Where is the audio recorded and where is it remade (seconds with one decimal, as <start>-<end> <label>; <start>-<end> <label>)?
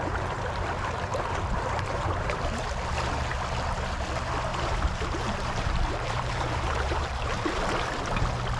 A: 0.0-1.1 recorded; 1.1-2.4 remade; 2.4-4.5 recorded; 4.5-7.5 remade; 7.5-8.6 recorded